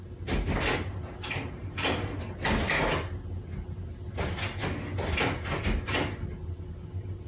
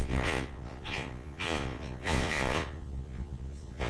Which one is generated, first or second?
second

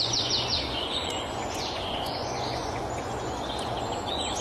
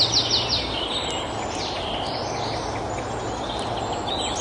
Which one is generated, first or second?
first